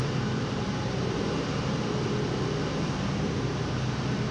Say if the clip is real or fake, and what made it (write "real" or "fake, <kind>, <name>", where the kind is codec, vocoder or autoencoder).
fake, vocoder, BigVGAN v2